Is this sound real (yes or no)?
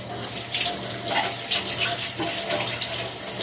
yes